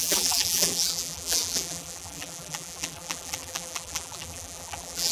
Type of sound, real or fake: fake